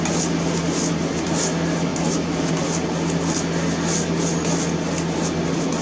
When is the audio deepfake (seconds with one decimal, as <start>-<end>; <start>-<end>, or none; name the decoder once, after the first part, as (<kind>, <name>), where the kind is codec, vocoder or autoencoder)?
none